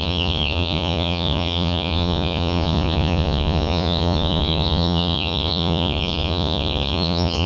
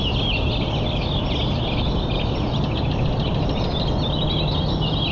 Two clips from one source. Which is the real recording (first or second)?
second